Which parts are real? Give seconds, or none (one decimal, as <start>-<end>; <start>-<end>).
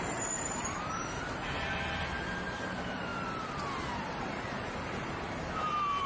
3.1-4.0